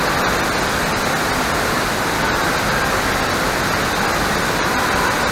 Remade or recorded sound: recorded